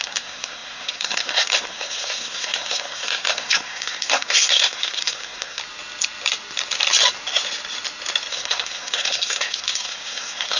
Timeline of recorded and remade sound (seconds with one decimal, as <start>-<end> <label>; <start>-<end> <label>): 0.0-5.6 remade; 5.6-8.3 recorded; 8.3-10.6 remade